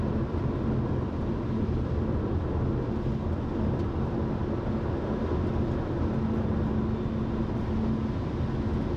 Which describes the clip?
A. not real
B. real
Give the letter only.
B